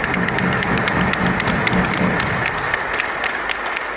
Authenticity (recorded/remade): recorded